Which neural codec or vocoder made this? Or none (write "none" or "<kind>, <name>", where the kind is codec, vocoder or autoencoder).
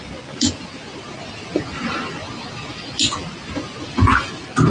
none